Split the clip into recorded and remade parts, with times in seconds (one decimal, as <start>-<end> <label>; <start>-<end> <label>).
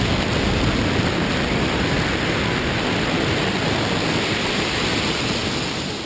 0.0-6.1 recorded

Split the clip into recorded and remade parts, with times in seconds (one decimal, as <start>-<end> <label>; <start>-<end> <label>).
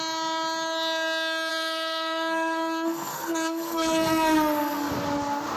0.0-1.5 recorded; 1.5-4.9 remade; 4.9-5.6 recorded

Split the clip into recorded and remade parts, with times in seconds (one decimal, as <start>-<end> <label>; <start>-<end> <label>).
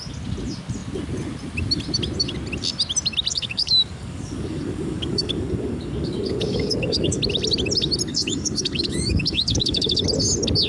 0.0-3.3 recorded; 3.3-7.2 remade; 7.2-8.1 recorded; 8.1-10.0 remade; 10.0-10.7 recorded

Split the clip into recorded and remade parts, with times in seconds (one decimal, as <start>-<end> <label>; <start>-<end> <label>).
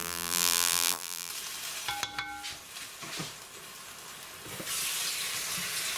0.0-1.3 remade; 1.3-6.0 recorded